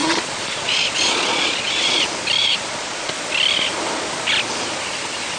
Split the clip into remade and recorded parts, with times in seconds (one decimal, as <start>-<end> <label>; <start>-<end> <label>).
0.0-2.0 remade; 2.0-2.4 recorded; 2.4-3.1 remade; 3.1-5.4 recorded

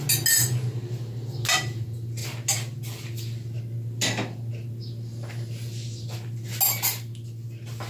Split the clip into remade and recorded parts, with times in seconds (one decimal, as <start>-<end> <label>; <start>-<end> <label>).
0.0-7.9 recorded

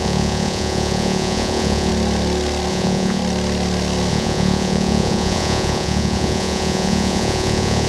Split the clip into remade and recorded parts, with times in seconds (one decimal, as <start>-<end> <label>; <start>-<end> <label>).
0.0-1.9 remade; 1.9-2.7 recorded; 2.7-3.2 remade; 3.2-4.1 recorded; 4.1-7.9 remade

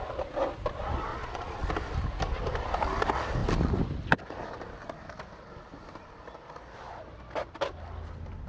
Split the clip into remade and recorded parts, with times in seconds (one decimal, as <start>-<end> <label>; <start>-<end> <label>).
0.0-1.1 recorded; 1.1-1.7 remade; 1.7-8.5 recorded

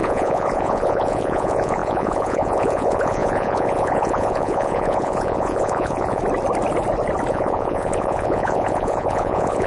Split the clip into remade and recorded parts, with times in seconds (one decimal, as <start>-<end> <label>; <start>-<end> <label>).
0.0-6.2 remade; 6.2-7.3 recorded; 7.3-9.7 remade